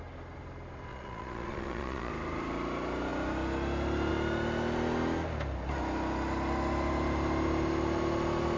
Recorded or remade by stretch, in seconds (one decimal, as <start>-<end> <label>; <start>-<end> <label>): 0.0-0.9 recorded; 0.9-2.1 remade; 2.1-8.6 recorded